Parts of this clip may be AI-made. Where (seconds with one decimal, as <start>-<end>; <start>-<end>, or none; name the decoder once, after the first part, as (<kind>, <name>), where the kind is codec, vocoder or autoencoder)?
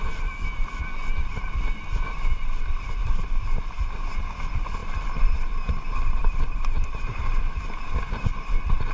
none